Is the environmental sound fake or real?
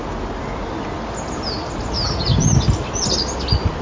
real